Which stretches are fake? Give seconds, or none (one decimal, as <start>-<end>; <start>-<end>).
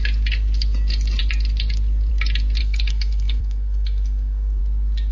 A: 2.6-4.6